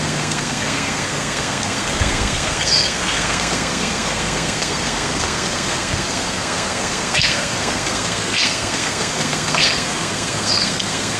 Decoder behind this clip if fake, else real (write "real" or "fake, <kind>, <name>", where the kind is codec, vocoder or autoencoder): fake, codec, SNAC